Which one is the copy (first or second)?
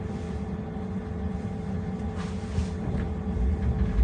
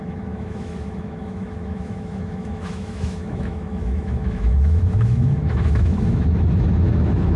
second